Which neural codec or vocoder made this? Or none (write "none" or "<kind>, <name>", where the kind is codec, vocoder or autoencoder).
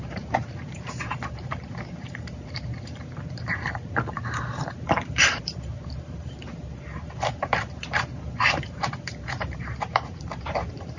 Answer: vocoder, BigVGAN v2